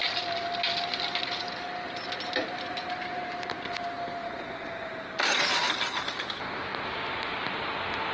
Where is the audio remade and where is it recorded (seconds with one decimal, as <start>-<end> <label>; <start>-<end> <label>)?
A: 0.0-4.2 recorded; 4.2-4.9 remade; 4.9-8.1 recorded

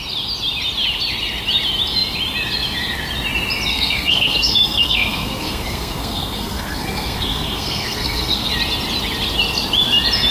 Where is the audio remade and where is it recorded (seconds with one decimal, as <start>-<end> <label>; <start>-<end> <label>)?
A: 0.0-3.7 recorded; 3.7-8.5 remade; 8.5-10.3 recorded

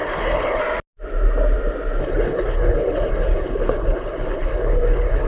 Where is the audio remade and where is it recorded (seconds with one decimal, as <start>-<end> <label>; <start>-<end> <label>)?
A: 0.0-0.6 remade; 0.6-2.0 recorded; 2.0-5.3 remade

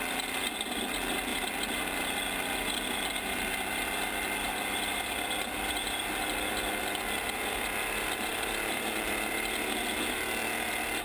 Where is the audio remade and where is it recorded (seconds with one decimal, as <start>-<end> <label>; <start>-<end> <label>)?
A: 0.0-8.3 recorded; 8.3-9.1 remade; 9.1-11.0 recorded

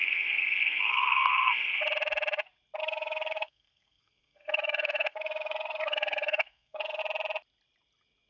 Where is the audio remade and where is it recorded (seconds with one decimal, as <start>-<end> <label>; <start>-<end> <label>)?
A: 0.0-1.8 remade; 1.8-2.8 recorded; 2.8-7.0 remade; 7.0-8.3 recorded

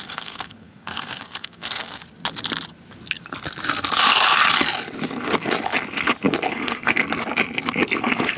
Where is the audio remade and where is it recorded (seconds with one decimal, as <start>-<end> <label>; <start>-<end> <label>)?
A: 0.0-2.0 remade; 2.0-6.5 recorded; 6.5-7.0 remade; 7.0-8.0 recorded; 8.0-8.4 remade

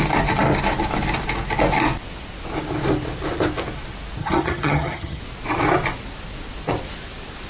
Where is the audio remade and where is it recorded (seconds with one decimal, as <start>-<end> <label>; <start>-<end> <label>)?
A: 0.0-4.2 recorded; 4.2-5.2 remade; 5.2-7.5 recorded

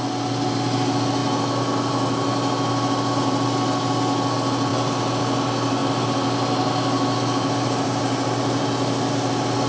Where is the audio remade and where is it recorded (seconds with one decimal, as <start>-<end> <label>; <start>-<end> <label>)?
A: 0.0-9.7 recorded